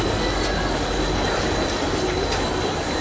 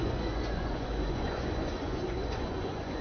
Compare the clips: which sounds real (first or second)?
first